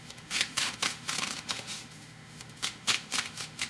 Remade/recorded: remade